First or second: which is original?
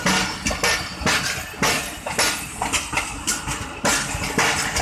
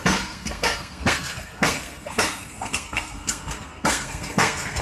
first